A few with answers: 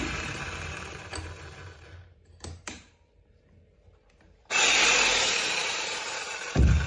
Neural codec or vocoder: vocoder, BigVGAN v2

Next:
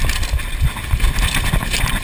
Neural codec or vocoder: none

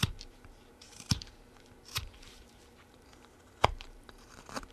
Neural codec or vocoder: vocoder, BigVGAN v2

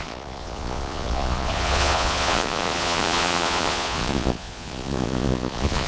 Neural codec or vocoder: vocoder, Vocos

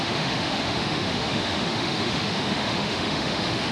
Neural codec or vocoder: autoencoder, DAC-VAE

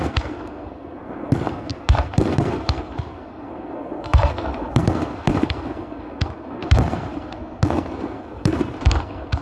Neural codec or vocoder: codec, SNAC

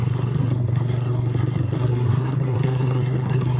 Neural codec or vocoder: codec, SNAC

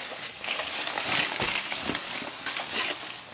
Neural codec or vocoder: codec, DAC